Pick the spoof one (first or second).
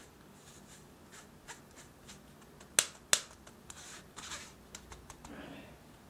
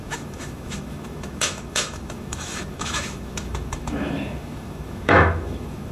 second